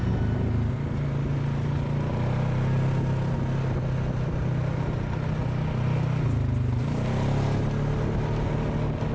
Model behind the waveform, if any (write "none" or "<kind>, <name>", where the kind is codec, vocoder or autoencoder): none